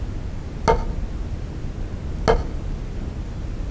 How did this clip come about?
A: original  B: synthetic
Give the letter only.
A